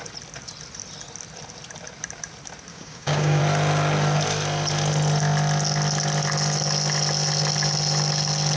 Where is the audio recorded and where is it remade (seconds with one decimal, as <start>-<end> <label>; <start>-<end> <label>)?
0.0-2.7 recorded; 2.7-3.4 remade; 3.4-8.6 recorded